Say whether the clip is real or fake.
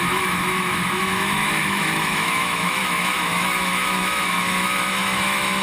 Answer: fake